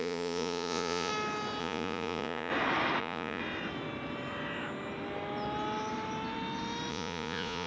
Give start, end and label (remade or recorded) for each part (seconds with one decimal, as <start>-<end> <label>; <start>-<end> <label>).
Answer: 0.0-1.1 remade; 1.1-1.6 recorded; 1.6-2.5 remade; 2.5-3.0 recorded; 3.0-3.4 remade; 3.4-6.9 recorded; 6.9-7.7 remade